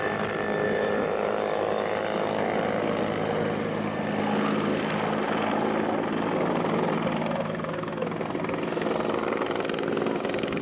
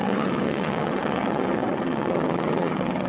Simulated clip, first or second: second